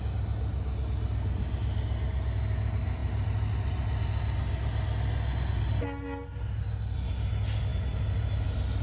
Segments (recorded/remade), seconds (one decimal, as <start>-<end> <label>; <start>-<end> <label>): 0.0-8.8 recorded